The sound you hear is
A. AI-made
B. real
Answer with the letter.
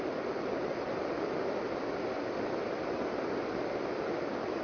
B